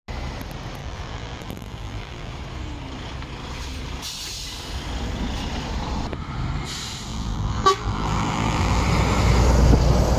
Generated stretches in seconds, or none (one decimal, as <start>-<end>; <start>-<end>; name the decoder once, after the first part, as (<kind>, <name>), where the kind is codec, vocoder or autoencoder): 0.8-2.3 (vocoder, BigVGAN v2); 7.1-8.8